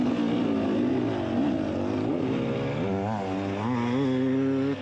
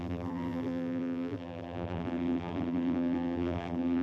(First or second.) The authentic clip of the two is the first